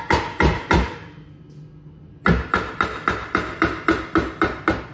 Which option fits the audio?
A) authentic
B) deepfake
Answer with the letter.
A